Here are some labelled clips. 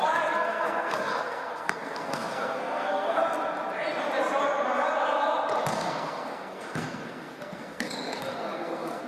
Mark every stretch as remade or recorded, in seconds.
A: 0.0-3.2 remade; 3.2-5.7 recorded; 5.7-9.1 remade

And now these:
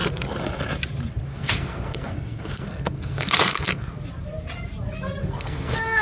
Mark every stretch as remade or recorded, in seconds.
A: 0.0-1.3 recorded; 1.3-3.9 remade; 3.9-5.2 recorded; 5.2-6.0 remade

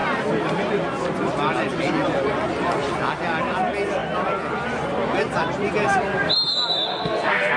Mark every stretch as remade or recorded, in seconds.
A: 0.0-6.9 recorded; 6.9-7.6 remade

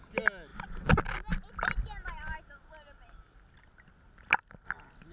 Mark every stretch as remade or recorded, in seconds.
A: 0.0-5.1 recorded

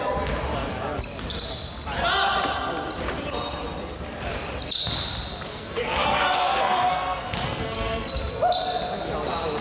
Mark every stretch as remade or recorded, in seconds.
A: 0.0-5.5 recorded; 5.5-8.2 remade; 8.2-9.6 recorded

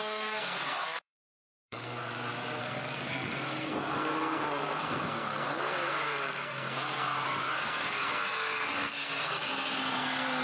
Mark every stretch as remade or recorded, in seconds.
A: 0.0-2.0 remade; 2.0-2.6 recorded; 2.6-10.4 remade